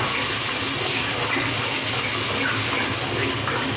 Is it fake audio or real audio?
real